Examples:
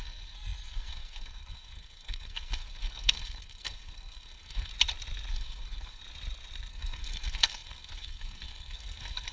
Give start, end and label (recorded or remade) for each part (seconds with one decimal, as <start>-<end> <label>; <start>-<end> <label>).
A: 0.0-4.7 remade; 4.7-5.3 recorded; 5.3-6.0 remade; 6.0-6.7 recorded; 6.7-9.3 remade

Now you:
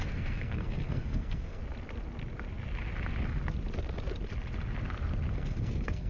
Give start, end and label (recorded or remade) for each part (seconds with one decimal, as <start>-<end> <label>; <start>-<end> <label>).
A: 0.0-1.6 remade; 1.6-5.3 recorded; 5.3-6.1 remade

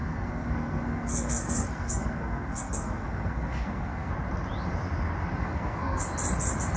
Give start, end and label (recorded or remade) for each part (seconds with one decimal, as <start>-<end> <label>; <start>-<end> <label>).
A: 0.0-4.1 remade; 4.1-5.4 recorded; 5.4-6.0 remade; 6.0-6.8 recorded

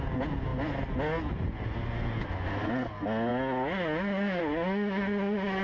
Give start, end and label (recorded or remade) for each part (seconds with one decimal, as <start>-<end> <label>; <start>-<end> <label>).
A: 0.0-5.6 recorded

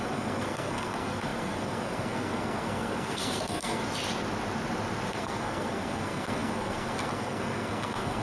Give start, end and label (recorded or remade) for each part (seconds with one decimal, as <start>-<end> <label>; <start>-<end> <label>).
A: 0.0-3.8 remade; 3.8-5.1 recorded; 5.1-8.2 remade